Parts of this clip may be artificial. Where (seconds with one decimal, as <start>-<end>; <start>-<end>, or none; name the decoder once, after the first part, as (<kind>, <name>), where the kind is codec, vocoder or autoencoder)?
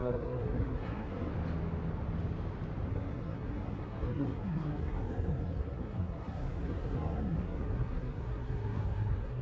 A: 0.0-1.3 (codec, SNAC); 2.9-9.4